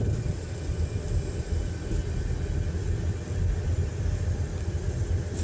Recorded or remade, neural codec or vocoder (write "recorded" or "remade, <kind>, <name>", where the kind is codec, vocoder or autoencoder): recorded